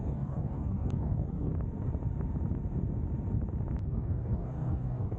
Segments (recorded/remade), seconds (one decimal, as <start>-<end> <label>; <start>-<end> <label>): 0.0-1.5 remade; 1.5-3.8 recorded; 3.8-5.2 remade